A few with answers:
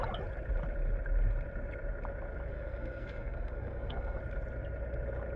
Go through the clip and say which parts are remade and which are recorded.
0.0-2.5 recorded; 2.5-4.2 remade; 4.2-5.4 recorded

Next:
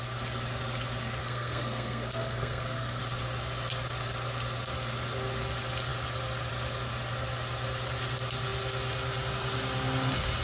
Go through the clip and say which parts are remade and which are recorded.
0.0-1.2 recorded; 1.2-3.0 remade; 3.0-10.4 recorded